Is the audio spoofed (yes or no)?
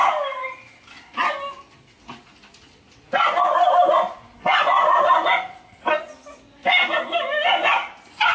no